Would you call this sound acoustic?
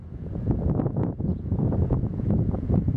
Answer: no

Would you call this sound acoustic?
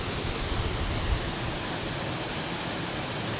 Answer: yes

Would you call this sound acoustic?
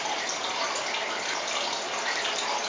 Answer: yes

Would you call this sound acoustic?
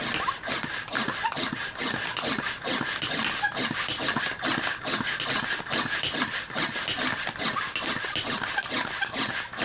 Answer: yes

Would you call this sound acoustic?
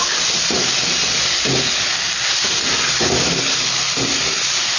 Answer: yes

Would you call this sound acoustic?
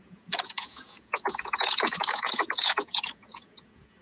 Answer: no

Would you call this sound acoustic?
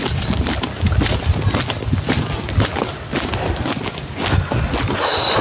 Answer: yes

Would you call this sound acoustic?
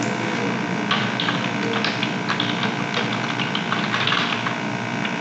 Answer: yes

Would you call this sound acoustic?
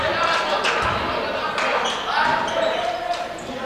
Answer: yes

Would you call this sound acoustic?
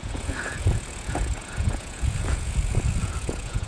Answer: no